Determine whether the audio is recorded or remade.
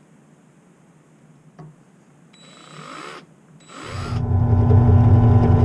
recorded